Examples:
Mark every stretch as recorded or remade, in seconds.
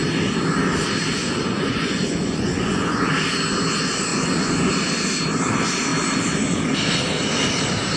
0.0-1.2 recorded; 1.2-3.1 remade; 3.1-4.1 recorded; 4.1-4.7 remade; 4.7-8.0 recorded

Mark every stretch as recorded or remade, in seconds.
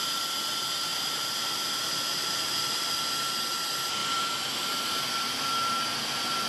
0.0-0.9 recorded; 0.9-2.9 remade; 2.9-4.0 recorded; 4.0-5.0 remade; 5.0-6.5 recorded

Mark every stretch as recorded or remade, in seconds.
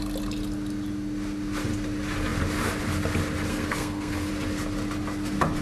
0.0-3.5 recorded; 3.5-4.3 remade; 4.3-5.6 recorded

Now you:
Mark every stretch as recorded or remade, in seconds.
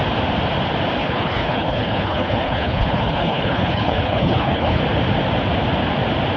0.0-1.0 recorded; 1.0-4.8 remade; 4.8-6.4 recorded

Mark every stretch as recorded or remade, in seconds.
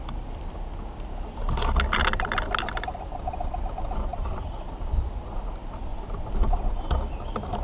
0.0-4.1 recorded; 4.1-5.5 remade; 5.5-7.6 recorded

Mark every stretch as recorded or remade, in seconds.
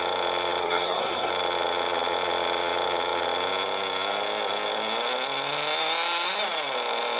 0.0-0.6 recorded; 0.6-1.3 remade; 1.3-7.2 recorded